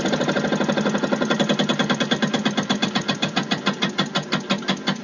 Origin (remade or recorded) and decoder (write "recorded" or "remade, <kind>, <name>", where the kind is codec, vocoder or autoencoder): recorded